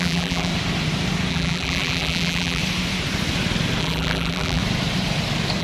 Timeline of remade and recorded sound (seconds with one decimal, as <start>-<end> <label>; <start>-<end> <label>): 0.0-0.5 remade; 0.5-1.3 recorded; 1.3-2.6 remade; 2.6-3.8 recorded; 3.8-4.6 remade; 4.6-5.6 recorded